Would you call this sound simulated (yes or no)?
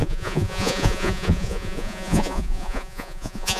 yes